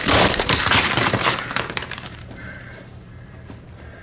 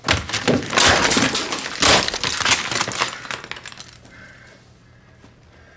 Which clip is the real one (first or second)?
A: second